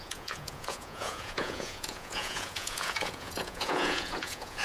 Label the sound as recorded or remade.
remade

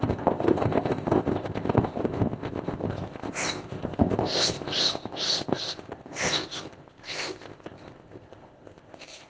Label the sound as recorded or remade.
remade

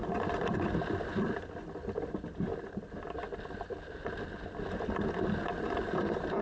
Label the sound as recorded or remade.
recorded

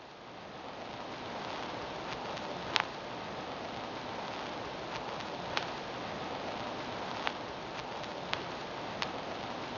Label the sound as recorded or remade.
recorded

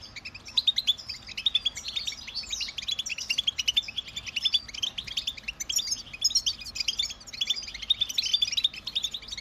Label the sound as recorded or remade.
recorded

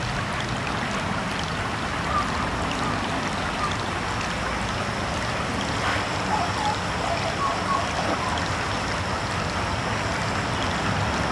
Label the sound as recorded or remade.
recorded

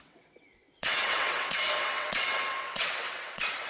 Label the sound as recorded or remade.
remade